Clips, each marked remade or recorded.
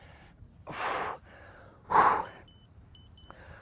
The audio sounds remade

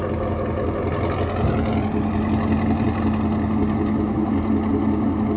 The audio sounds recorded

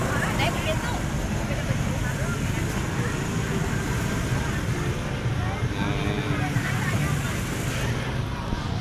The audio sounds recorded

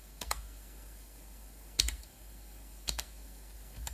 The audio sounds remade